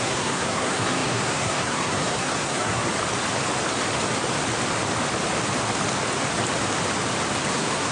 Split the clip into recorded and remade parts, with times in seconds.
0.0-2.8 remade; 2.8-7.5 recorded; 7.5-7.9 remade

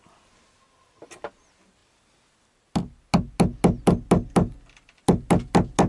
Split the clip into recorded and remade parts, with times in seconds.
0.0-5.9 recorded

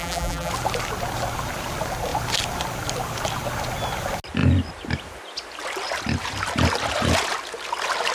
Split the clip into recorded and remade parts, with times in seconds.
0.0-0.5 remade; 0.5-8.1 recorded

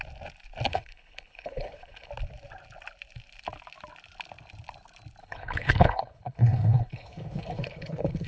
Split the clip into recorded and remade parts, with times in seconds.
0.0-0.7 recorded; 0.7-2.1 remade; 2.1-5.2 recorded; 5.2-8.3 remade

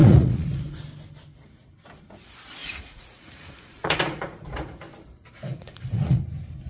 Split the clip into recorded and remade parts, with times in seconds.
0.0-0.6 remade; 0.6-2.6 recorded; 2.6-4.8 remade; 4.8-5.5 recorded; 5.5-6.2 remade; 6.2-6.7 recorded

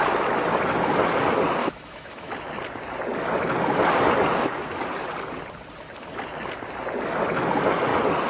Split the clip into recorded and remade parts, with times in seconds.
0.0-1.6 recorded; 1.6-2.3 remade; 2.3-8.3 recorded

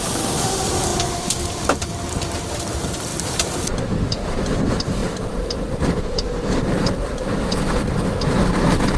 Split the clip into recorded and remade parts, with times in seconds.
0.0-0.9 remade; 0.9-1.9 recorded; 1.9-7.8 remade; 7.8-8.6 recorded; 8.6-9.0 remade

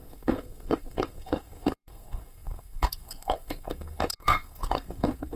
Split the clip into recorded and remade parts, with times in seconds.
0.0-5.4 remade